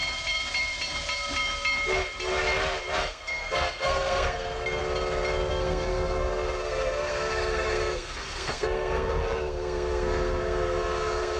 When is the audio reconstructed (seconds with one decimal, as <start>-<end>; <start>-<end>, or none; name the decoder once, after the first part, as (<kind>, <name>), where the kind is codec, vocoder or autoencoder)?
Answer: 3.0-4.8 (codec, SNAC); 5.5-11.4